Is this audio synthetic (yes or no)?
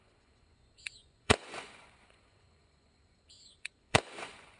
yes